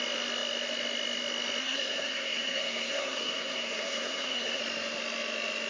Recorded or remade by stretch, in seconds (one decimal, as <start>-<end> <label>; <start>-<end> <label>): 0.0-1.6 recorded; 1.6-4.6 remade; 4.6-5.7 recorded